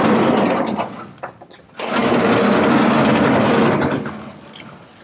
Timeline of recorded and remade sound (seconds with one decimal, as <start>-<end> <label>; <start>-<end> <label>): 0.0-5.0 recorded